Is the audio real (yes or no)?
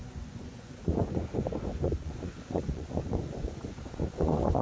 no